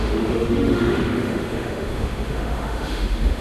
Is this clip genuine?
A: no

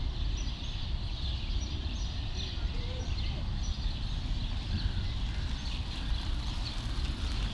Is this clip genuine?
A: yes